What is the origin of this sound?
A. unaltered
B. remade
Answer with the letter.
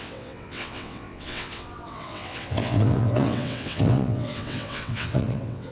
B